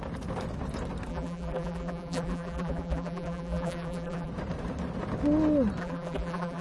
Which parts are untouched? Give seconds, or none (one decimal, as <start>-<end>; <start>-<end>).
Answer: 0.0-1.1; 4.3-5.8